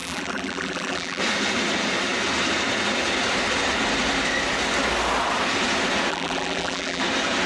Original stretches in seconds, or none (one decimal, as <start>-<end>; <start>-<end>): 1.2-6.1; 7.0-7.5